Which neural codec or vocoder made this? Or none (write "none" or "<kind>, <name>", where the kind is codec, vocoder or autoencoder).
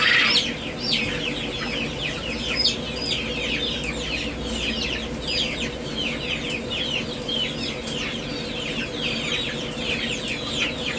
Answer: none